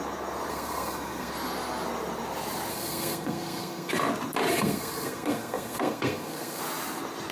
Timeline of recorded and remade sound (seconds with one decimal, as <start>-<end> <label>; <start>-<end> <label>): 0.0-0.5 recorded; 0.5-1.3 remade; 1.3-2.7 recorded; 2.7-3.9 remade; 3.9-4.5 recorded; 4.5-6.6 remade; 6.6-7.3 recorded